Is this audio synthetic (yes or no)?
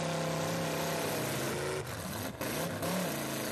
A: no